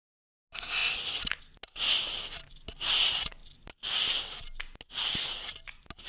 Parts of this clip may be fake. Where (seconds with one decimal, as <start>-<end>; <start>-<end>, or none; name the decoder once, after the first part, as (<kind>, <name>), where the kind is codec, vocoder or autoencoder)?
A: none